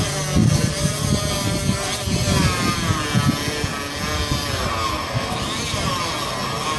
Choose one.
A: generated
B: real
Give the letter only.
B